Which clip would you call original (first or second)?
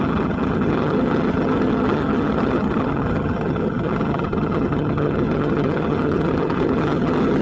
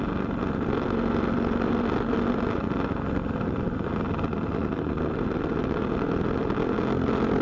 second